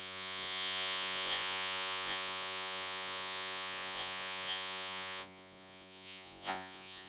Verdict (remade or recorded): remade